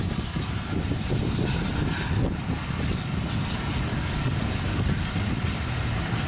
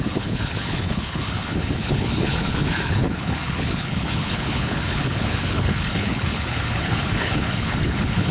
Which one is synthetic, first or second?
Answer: second